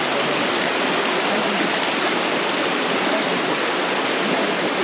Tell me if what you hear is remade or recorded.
recorded